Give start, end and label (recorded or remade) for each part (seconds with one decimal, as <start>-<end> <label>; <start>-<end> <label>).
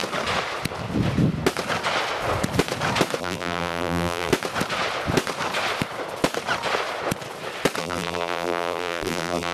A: 0.0-3.2 recorded; 3.2-4.3 remade; 4.3-7.8 recorded; 7.8-9.5 remade